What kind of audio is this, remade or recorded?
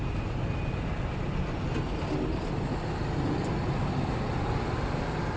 recorded